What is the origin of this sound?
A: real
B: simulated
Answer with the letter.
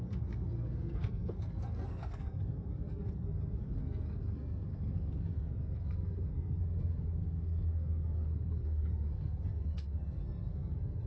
B